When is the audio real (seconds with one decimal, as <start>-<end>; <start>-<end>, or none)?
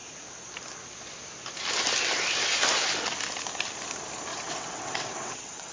0.0-4.3